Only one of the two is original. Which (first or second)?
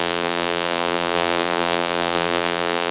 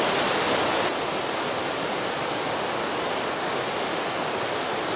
second